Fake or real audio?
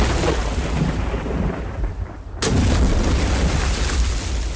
real